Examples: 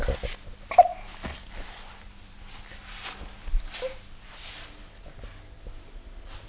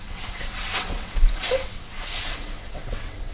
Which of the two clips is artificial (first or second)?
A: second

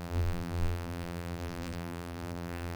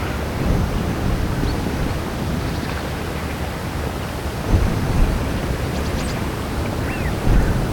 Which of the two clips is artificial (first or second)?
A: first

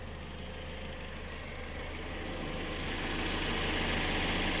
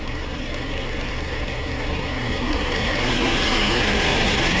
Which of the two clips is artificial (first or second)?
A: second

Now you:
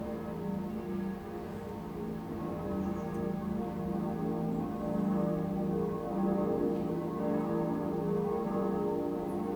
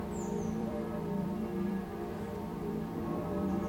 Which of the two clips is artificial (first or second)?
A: second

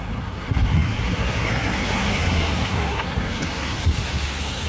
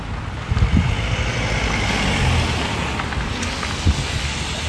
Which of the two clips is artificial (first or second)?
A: first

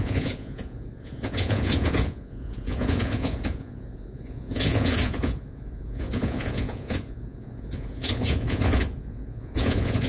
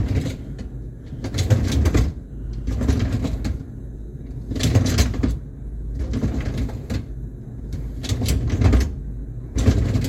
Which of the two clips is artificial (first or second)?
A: first